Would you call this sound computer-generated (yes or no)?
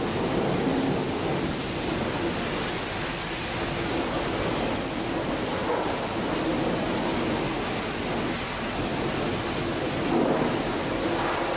no